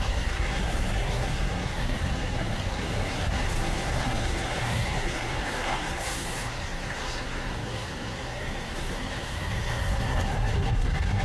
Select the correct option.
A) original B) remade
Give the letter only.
B